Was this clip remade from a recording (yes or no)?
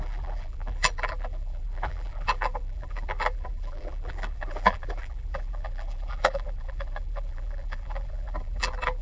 yes